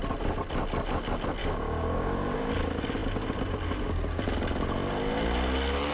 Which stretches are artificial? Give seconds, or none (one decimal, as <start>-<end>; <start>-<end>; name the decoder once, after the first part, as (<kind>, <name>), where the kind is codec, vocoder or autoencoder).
1.4-2.5 (codec, DAC)